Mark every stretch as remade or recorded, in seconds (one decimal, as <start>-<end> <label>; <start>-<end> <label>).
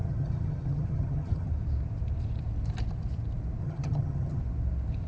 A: 0.0-1.5 remade; 1.5-3.6 recorded; 3.6-4.4 remade; 4.4-5.1 recorded